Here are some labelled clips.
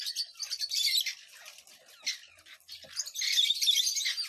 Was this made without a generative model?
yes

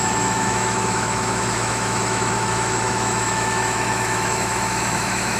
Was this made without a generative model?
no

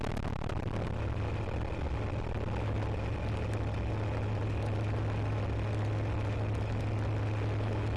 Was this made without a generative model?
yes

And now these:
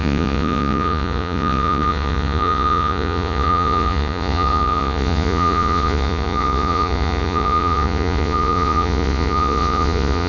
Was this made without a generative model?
no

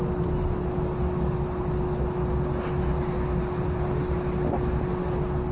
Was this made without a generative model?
yes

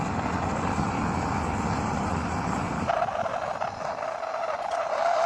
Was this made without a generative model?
yes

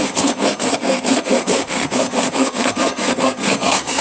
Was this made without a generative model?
no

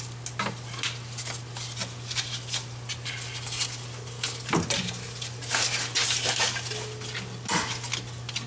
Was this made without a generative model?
yes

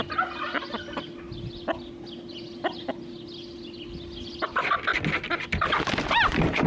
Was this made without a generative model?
yes